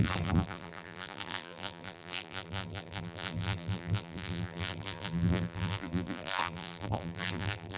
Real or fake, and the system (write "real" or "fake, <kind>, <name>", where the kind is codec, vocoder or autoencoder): fake, vocoder, BigVGAN v2